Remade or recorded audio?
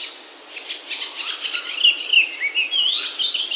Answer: recorded